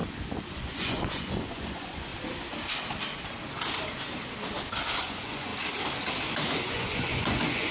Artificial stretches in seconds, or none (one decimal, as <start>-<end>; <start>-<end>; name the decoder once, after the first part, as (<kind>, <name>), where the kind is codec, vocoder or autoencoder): 0.5-2.1 (vocoder, Vocos); 5.0-5.5; 6.5-7.7